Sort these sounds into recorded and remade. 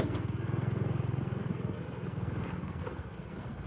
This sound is remade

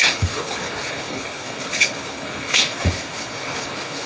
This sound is remade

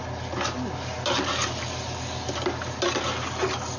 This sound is recorded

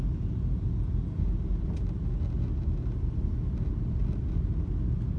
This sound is recorded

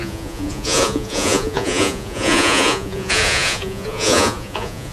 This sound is remade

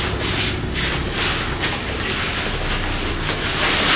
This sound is recorded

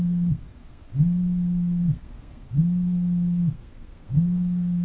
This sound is remade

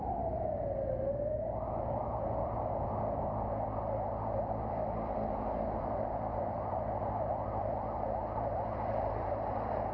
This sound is recorded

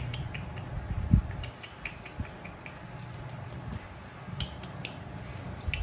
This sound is recorded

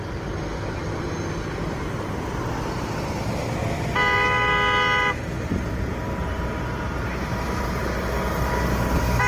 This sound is recorded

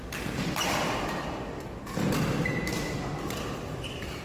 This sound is recorded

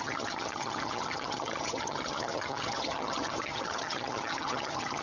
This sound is remade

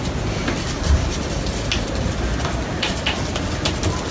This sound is recorded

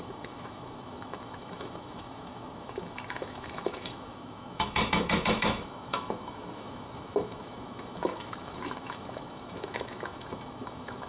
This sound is remade